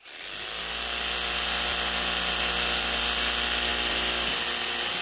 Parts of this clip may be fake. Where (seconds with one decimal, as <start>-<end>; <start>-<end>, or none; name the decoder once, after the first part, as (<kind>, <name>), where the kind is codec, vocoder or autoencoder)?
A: none